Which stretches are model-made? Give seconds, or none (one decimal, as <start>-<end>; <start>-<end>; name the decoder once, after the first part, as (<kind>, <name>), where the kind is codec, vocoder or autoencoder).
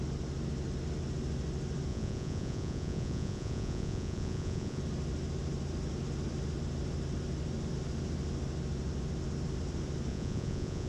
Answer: 1.9-4.8 (vocoder, Vocos); 10.1-10.9